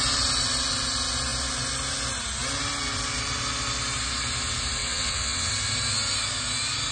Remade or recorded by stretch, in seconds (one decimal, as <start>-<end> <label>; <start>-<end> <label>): 0.0-4.8 recorded; 4.8-5.5 remade; 5.5-6.9 recorded